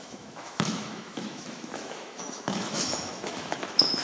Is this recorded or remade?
remade